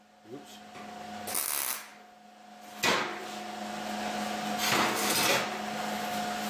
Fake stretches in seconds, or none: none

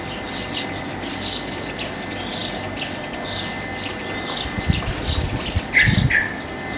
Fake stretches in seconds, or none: none

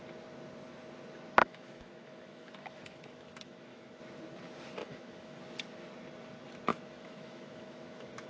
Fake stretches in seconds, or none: 1.4-4.0 (autoencoder, DAC-VAE); 4.8-5.4; 6.7-8.3

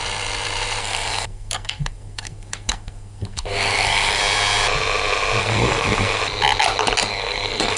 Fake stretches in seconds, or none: 0.8-4.2 (codec, SNAC); 5.4-6.2; 7.1-7.8

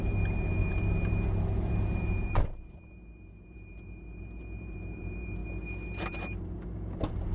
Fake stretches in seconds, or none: 0.0-5.4 (vocoder, BigVGAN v2); 6.1-7.3

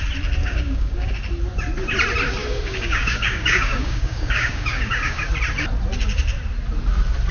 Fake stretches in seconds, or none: 0.4-1.1 (codec, DAC); 2.4-5.3

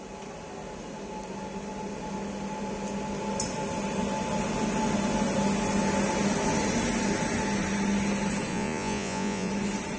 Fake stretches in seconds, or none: 8.5-9.5 (vocoder, Vocos)

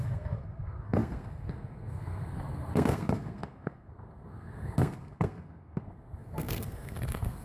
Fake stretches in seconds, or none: 0.0-7.4 (codec, SNAC)